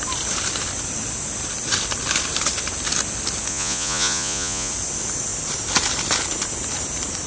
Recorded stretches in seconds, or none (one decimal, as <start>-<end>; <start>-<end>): 0.0-3.5; 4.7-7.3

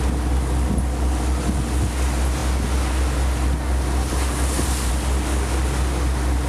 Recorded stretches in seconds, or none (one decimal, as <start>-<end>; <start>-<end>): 0.0-6.5

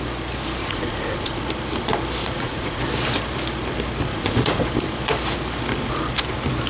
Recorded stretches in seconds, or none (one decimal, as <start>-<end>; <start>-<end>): 0.0-0.6; 1.4-2.2; 2.8-4.1; 4.6-6.7

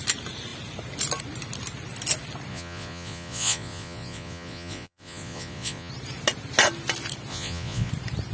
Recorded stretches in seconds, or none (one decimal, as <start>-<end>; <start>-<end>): 0.0-2.5; 5.9-7.3; 7.9-8.3